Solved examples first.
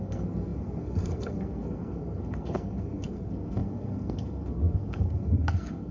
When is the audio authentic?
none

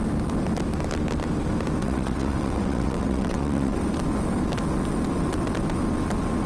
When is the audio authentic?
0.0-1.8; 3.8-6.5

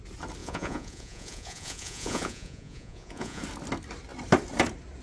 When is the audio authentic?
0.0-0.4; 3.4-5.0

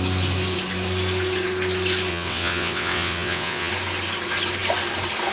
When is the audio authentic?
0.0-2.1; 3.7-5.3

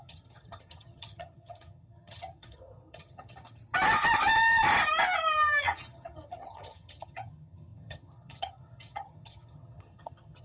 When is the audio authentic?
3.6-5.6

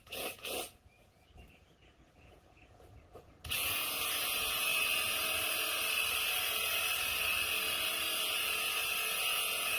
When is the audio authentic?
4.7-8.2